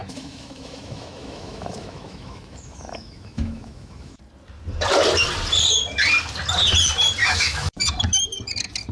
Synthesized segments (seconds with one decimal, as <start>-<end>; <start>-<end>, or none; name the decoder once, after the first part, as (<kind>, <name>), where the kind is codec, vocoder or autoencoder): 0.0-4.2 (autoencoder, DAC-VAE); 7.2-7.8